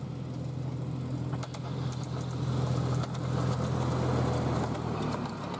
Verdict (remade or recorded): recorded